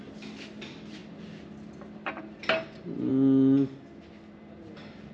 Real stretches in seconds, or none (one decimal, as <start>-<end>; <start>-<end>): 0.0-5.1